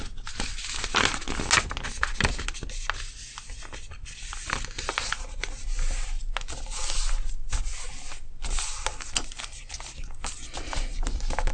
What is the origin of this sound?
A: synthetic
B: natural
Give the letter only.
B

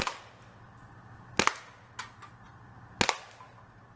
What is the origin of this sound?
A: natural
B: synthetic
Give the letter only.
A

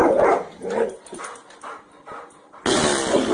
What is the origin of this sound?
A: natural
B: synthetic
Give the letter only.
A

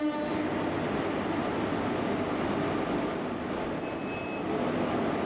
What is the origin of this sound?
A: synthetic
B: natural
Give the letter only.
B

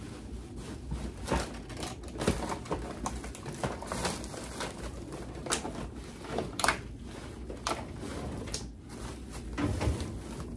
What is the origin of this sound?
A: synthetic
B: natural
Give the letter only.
B